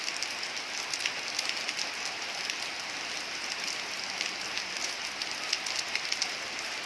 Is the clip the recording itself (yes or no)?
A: yes